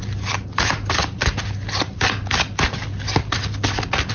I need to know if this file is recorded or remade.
recorded